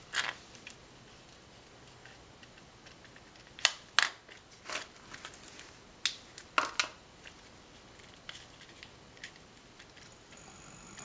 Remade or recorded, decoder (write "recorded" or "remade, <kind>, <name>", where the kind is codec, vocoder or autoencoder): recorded